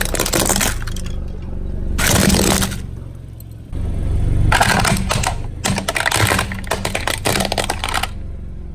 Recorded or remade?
recorded